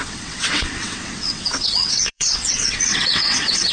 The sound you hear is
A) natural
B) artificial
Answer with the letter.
B